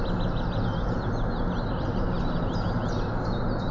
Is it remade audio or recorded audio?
recorded